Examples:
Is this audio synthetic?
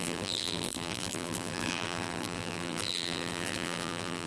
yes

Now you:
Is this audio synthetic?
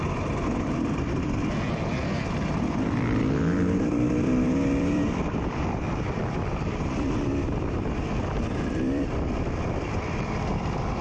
yes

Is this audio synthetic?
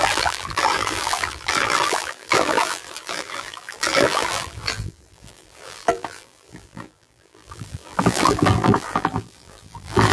yes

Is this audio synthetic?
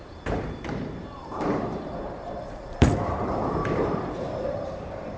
yes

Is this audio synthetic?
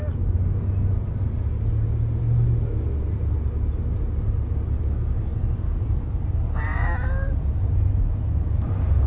no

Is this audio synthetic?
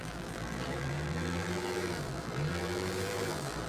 yes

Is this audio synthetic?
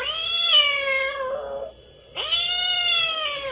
no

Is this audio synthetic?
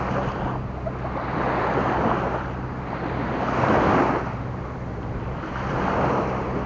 no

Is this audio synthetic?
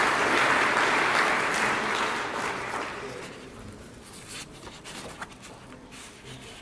no